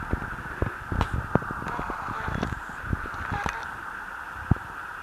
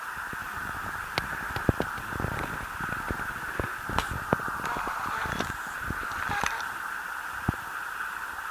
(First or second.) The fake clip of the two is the second